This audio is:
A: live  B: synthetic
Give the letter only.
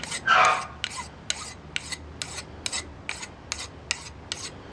A